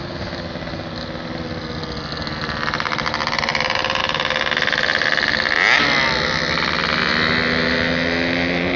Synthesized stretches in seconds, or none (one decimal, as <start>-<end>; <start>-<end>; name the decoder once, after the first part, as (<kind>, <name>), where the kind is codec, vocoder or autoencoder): none